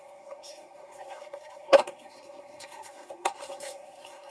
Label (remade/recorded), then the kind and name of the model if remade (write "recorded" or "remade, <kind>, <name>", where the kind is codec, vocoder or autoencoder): remade, codec, SNAC